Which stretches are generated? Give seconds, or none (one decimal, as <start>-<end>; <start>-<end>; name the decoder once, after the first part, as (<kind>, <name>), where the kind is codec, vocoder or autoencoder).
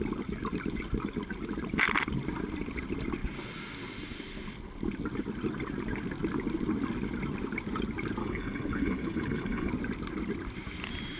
8.2-9.7 (codec, HILCodec)